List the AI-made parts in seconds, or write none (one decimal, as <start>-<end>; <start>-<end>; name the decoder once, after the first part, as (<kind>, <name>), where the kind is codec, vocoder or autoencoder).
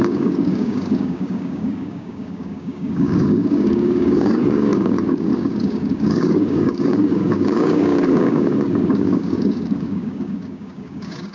0.0-11.3 (codec, DAC)